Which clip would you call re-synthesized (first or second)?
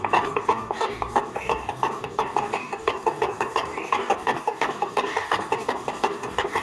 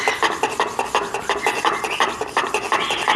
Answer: first